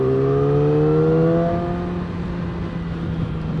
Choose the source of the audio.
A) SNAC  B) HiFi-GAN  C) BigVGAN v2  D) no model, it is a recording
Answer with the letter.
D